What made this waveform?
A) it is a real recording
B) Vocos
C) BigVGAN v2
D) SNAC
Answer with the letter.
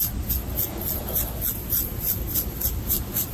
A